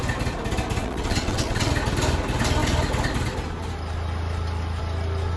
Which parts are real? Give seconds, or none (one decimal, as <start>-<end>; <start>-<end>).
0.0-0.8; 1.7-5.4